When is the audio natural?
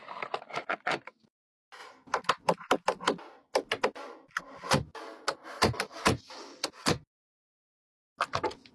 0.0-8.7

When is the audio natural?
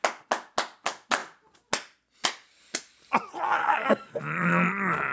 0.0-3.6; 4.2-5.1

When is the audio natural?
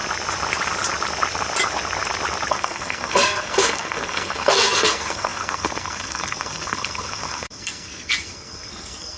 0.0-2.5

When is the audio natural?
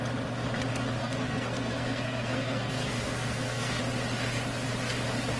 0.0-1.0; 3.8-5.4